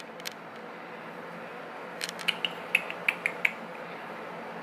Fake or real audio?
real